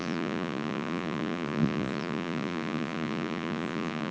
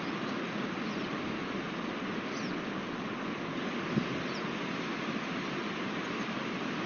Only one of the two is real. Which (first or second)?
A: second